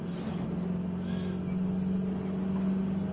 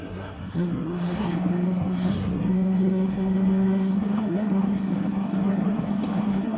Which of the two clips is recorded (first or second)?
first